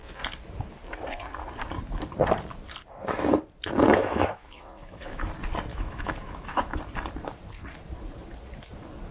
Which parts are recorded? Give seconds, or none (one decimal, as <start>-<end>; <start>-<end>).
0.0-4.0; 5.3-5.7; 6.8-9.1